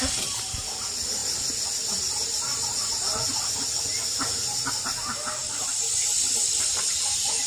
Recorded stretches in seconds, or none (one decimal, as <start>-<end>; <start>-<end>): 0.0-7.5